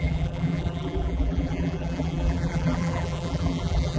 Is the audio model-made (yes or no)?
yes